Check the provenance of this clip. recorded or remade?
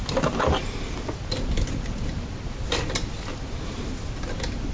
recorded